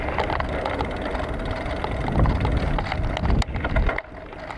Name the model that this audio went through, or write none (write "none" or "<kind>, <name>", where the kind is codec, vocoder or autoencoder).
none